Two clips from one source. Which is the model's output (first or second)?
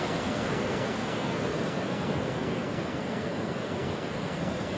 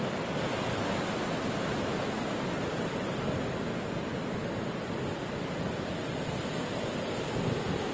first